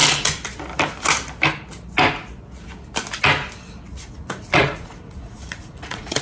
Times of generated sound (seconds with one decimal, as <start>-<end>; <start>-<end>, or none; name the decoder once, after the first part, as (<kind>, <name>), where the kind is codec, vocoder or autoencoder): 3.9-6.2 (vocoder, Vocos)